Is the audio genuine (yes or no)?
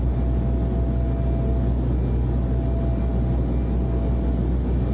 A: yes